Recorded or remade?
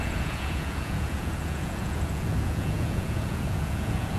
remade